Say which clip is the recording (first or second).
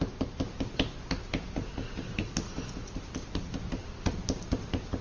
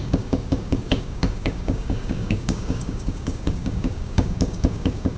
first